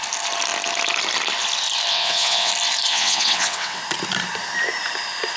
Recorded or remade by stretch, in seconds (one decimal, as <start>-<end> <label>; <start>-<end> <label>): 0.0-1.9 recorded; 1.9-2.5 remade; 2.5-2.9 recorded; 2.9-3.8 remade; 3.8-5.4 recorded